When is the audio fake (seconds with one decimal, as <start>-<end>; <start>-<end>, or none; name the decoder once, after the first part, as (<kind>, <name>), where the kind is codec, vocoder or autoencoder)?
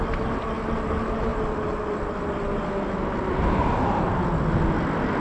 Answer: none